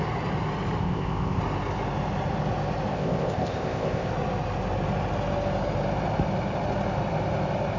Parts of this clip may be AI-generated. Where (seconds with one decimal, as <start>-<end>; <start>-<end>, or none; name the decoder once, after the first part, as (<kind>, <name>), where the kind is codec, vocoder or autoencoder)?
0.8-1.4 (codec, ZipCodec); 2.9-4.1